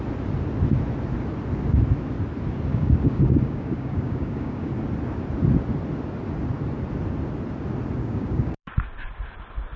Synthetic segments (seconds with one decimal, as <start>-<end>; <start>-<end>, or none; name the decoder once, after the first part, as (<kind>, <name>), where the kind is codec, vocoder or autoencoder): 2.7-4.7 (codec, DAC); 8.0-8.7